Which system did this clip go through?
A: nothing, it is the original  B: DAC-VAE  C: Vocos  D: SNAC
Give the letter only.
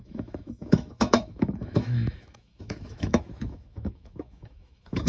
B